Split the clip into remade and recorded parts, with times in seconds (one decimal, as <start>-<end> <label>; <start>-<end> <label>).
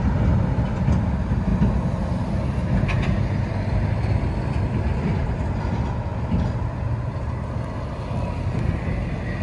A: 0.0-9.4 recorded